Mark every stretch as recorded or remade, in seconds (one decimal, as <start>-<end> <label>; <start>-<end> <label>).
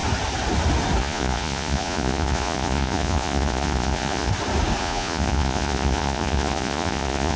0.0-1.0 recorded; 1.0-4.3 remade; 4.3-4.8 recorded; 4.8-7.4 remade